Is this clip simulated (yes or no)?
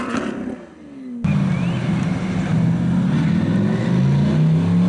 no